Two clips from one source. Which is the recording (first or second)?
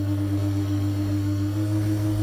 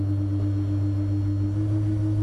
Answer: second